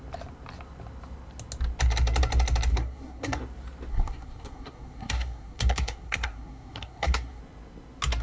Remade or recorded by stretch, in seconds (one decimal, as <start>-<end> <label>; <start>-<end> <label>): 0.0-2.7 recorded; 2.7-3.4 remade; 3.4-3.9 recorded; 3.9-7.4 remade; 7.4-8.2 recorded